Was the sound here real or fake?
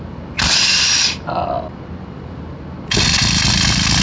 real